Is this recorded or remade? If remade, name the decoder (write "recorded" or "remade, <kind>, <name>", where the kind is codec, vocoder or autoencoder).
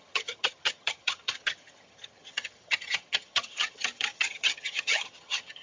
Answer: remade, vocoder, HiFi-GAN